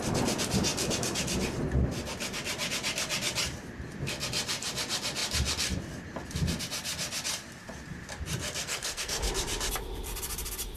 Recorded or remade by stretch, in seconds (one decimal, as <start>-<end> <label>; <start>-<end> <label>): 0.0-8.6 recorded; 8.6-9.3 remade; 9.3-10.8 recorded